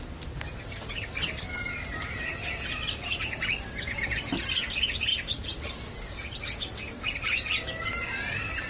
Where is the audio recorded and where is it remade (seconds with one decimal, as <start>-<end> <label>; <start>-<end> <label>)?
0.0-8.7 recorded